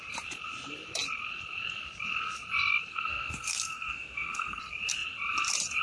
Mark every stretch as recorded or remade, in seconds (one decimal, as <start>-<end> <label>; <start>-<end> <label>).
0.0-2.9 recorded; 2.9-4.6 remade; 4.6-5.8 recorded

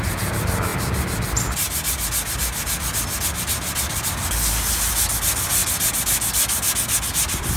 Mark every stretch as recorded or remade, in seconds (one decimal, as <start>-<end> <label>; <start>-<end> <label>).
0.0-7.6 recorded

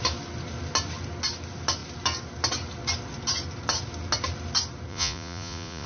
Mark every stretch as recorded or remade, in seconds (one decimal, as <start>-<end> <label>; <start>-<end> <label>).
0.0-4.9 recorded; 4.9-5.9 remade

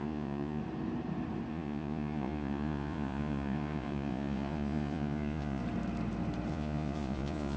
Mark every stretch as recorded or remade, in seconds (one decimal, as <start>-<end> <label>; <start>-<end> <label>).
0.0-0.6 remade; 0.6-1.5 recorded; 1.5-5.6 remade; 5.6-6.5 recorded; 6.5-7.6 remade

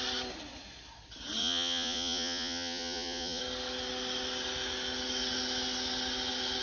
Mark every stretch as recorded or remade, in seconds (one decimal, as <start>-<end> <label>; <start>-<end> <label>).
0.0-1.4 recorded; 1.4-3.4 remade; 3.4-6.6 recorded

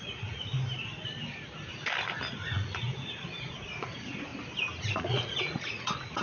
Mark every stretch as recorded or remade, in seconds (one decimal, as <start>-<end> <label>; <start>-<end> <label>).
0.0-0.5 remade; 0.5-2.3 recorded; 2.3-4.3 remade; 4.3-5.0 recorded; 5.0-6.2 remade

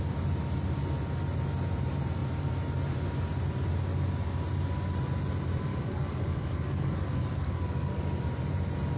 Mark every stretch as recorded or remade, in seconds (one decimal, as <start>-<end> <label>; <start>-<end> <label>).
0.0-5.7 recorded; 5.7-8.2 remade; 8.2-9.0 recorded